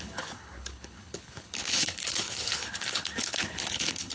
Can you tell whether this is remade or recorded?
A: remade